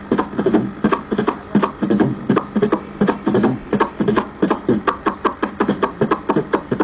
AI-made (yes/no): no